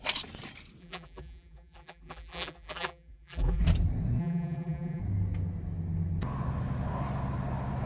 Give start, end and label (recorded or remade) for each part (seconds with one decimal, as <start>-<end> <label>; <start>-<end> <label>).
0.0-0.8 recorded; 0.8-3.6 remade; 3.6-4.2 recorded; 4.2-5.0 remade; 5.0-7.9 recorded